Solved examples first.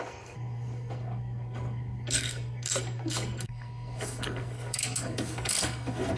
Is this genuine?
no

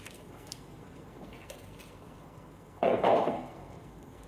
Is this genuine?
no